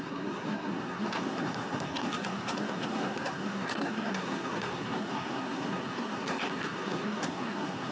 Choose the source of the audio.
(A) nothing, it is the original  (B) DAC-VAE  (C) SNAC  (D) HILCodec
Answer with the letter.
C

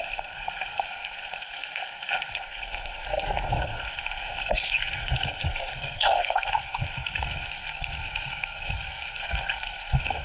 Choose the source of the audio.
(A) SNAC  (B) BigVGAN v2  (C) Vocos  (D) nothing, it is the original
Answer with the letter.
A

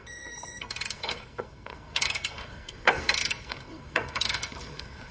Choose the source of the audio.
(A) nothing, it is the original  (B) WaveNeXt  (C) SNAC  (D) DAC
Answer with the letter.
C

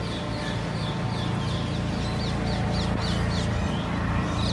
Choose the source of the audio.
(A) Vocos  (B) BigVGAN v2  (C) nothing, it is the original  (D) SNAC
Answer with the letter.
C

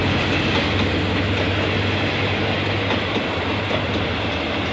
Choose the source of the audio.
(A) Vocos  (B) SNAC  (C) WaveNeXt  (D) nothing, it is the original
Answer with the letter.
D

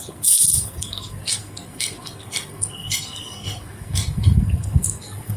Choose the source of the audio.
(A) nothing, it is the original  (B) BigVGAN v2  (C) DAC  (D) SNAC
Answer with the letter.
D